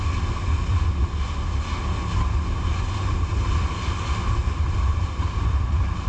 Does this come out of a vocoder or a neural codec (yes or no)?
no